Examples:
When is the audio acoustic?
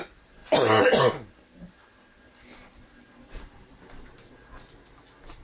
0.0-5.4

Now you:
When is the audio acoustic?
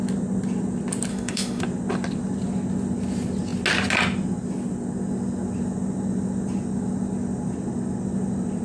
0.0-1.1; 1.6-8.6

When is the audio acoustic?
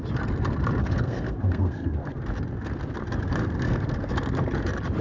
0.0-0.8; 2.2-3.4; 4.1-5.0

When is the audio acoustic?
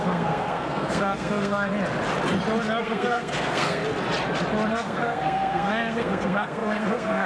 1.7-2.8; 3.8-4.7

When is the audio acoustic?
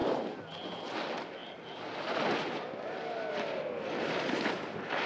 0.0-5.1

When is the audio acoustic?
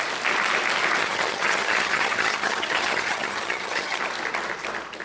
0.0-1.0; 4.0-5.0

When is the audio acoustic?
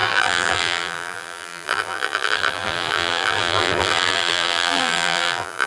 none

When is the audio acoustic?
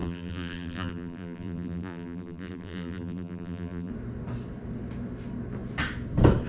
3.9-6.5